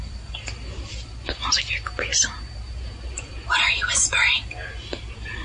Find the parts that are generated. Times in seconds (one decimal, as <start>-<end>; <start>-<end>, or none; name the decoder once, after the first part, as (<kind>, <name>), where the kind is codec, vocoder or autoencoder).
none